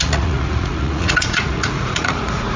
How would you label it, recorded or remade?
remade